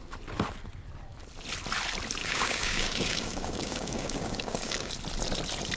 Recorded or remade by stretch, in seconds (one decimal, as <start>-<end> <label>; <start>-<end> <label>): 0.0-2.2 recorded; 2.2-4.9 remade; 4.9-5.8 recorded